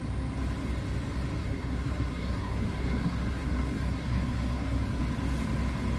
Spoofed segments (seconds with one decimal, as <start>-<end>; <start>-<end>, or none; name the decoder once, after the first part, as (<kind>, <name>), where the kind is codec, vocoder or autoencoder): 1.4-5.0 (codec, SNAC)